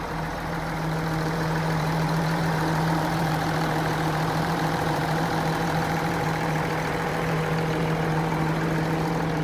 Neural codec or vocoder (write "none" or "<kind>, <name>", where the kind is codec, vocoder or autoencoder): vocoder, BigVGAN v2